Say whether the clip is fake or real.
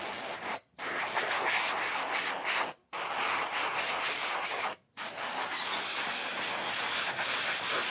real